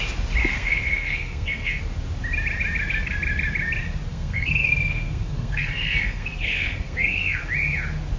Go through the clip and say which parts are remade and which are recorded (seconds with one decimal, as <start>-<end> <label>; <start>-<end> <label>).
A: 0.0-0.4 recorded; 0.4-1.8 remade; 1.8-4.1 recorded; 4.1-7.4 remade; 7.4-8.2 recorded